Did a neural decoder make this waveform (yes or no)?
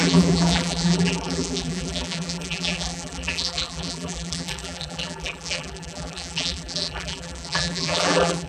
yes